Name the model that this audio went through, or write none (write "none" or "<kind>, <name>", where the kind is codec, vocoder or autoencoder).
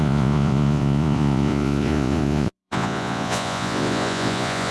vocoder, Vocos